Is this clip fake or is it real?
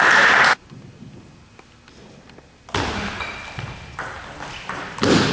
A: real